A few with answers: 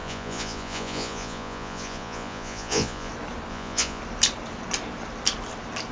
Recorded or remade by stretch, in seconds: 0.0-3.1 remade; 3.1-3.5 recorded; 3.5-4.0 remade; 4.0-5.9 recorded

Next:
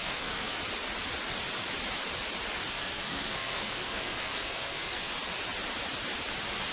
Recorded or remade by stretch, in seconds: 0.0-0.6 remade; 0.6-2.7 recorded; 2.7-5.1 remade; 5.1-6.7 recorded